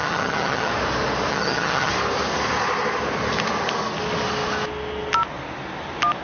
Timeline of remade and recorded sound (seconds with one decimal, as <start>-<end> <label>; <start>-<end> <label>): 0.0-0.7 remade; 0.7-1.3 recorded; 1.3-1.9 remade; 1.9-6.2 recorded